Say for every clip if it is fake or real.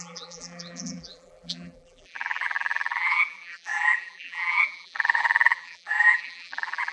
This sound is fake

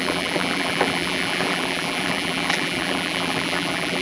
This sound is fake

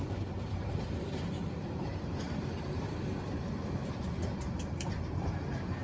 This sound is fake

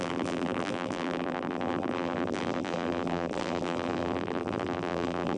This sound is fake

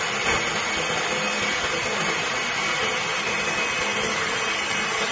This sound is real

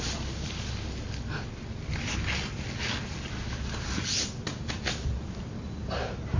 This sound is real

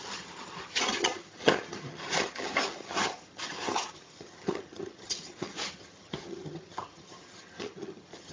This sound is fake